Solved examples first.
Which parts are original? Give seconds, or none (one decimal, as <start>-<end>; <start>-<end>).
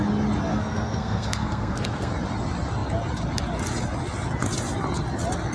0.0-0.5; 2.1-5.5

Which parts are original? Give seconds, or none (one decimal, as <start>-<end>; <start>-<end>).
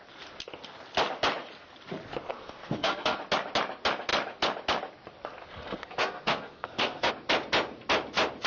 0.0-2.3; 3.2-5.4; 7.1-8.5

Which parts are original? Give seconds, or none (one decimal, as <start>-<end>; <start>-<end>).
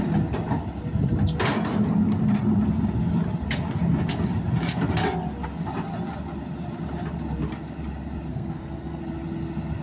0.0-8.3; 9.0-9.8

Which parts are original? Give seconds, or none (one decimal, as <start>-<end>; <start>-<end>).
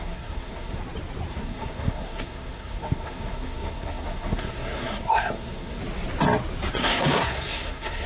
0.8-1.3; 5.8-6.8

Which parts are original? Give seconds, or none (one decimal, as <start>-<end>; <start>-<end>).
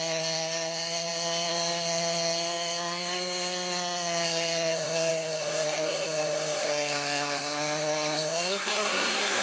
none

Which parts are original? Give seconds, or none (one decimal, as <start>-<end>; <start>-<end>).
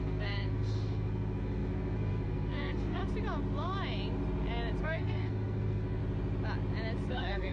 3.0-4.8; 6.0-7.1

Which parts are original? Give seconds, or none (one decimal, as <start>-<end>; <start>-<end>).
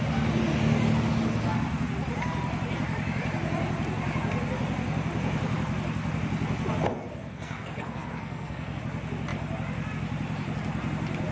0.0-6.9; 8.8-11.3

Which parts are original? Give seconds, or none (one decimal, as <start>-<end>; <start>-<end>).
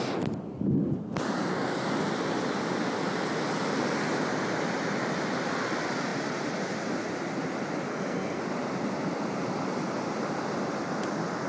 0.0-7.9; 8.4-11.5